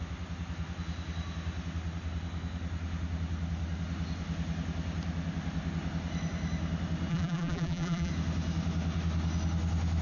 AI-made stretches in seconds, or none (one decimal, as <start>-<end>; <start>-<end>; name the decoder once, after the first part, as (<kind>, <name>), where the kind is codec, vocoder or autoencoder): 7.1-8.1 (vocoder, BigVGAN v2)